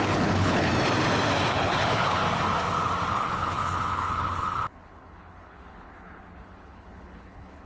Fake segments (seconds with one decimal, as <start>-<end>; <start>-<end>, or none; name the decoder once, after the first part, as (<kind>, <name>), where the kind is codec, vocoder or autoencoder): 0.0-0.7 (codec, HILCodec); 1.5-2.2; 3.1-7.7